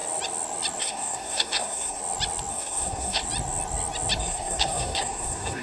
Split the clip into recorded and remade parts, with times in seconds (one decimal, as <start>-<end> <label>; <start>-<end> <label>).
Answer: 0.0-0.8 recorded; 0.8-2.0 remade; 2.0-2.5 recorded; 2.5-3.2 remade; 3.2-4.2 recorded; 4.2-5.6 remade